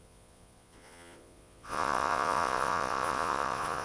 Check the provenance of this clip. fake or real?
fake